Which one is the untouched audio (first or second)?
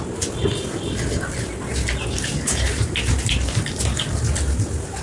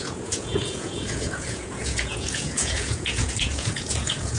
first